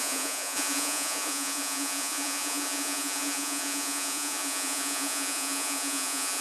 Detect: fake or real fake